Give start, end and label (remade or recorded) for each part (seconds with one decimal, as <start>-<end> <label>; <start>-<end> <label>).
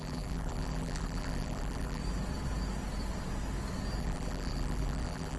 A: 0.0-2.0 remade; 2.0-4.0 recorded; 4.0-5.4 remade